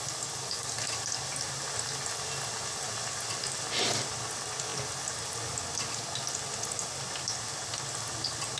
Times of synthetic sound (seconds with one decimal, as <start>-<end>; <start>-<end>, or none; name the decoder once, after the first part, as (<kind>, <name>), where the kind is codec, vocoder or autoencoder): none